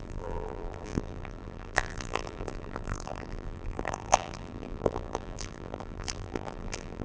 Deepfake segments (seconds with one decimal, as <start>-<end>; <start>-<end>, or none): 0.0-7.0